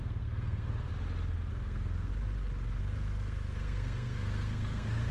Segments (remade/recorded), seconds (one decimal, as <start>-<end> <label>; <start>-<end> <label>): 0.0-0.9 remade; 0.9-1.5 recorded; 1.5-2.1 remade; 2.1-2.8 recorded; 2.8-5.1 remade